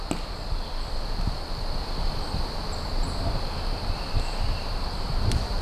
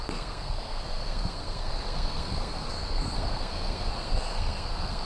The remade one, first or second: second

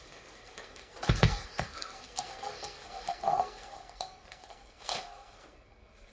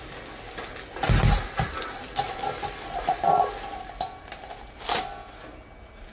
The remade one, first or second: first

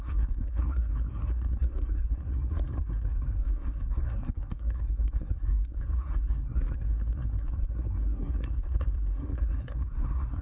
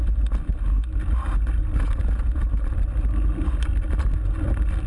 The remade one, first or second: first